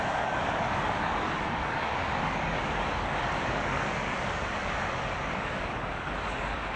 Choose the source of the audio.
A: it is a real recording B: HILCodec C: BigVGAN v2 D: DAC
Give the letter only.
D